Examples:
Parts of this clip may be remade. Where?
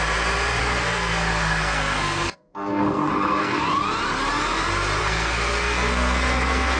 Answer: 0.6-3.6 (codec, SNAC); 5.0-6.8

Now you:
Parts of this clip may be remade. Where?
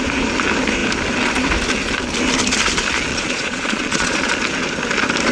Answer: 3.1-4.3 (vocoder, Vocos)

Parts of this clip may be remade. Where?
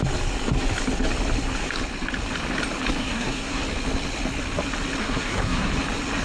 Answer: 3.0-3.6 (codec, SNAC); 5.0-5.7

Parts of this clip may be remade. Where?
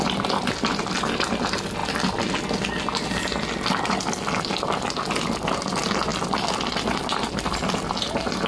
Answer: none